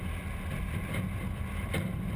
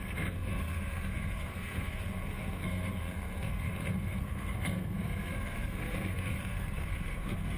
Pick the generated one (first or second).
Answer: second